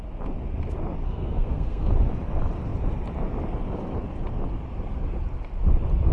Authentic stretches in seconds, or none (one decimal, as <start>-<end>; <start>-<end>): 0.0-1.0; 1.9-6.1